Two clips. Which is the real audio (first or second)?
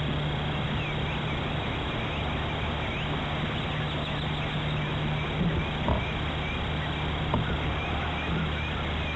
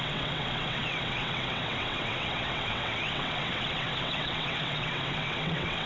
first